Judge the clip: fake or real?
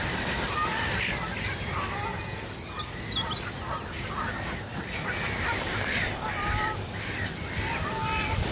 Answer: real